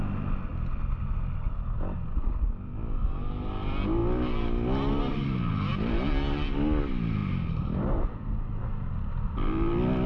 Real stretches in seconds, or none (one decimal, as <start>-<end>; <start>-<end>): 0.0-10.1